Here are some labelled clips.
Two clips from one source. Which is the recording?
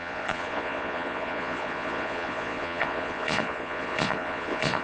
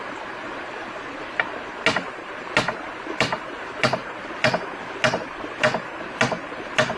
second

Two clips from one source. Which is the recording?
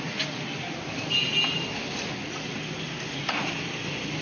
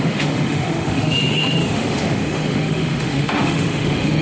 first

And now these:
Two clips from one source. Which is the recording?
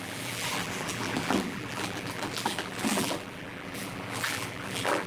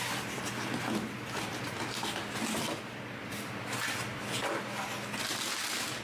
second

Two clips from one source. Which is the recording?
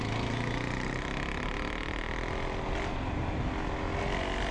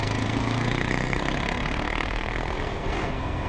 first